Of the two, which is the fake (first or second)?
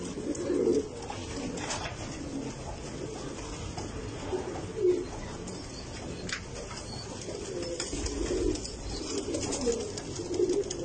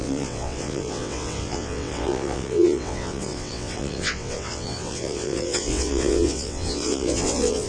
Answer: second